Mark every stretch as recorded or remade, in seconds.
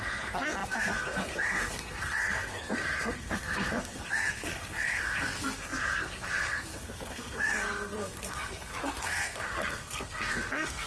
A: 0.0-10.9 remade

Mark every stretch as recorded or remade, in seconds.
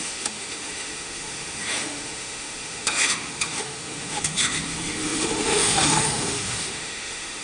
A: 0.0-7.4 remade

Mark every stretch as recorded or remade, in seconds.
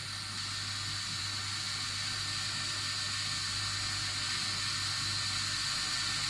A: 0.0-6.3 recorded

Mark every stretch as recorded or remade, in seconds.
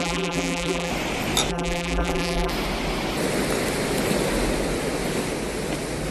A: 0.0-0.9 remade; 0.9-1.5 recorded; 1.5-2.5 remade; 2.5-6.1 recorded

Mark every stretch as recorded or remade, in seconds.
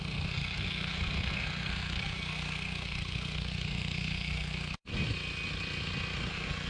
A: 0.0-4.9 remade; 4.9-6.3 recorded; 6.3-6.7 remade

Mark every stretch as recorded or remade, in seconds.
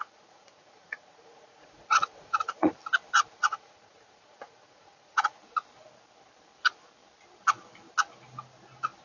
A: 0.0-2.7 remade; 2.7-3.4 recorded; 3.4-5.4 remade; 5.4-9.0 recorded